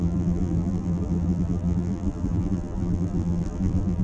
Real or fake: fake